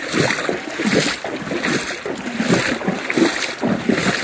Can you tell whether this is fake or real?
real